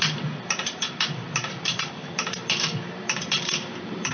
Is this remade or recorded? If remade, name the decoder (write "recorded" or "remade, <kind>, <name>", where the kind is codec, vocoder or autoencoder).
remade, vocoder, BigVGAN v2